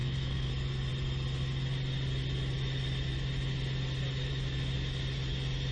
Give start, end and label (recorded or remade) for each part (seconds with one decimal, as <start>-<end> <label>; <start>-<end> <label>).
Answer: 0.0-0.5 remade; 0.5-5.7 recorded